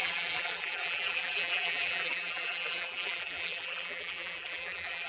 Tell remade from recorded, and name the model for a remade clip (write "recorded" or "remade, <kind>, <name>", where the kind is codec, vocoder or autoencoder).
remade, vocoder, BigVGAN v2